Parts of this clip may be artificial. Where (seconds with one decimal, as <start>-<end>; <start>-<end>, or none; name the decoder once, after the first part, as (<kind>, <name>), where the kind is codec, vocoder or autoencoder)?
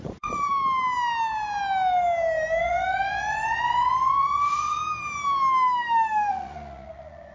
0.0-0.5 (vocoder, Vocos); 2.6-4.8; 6.3-7.3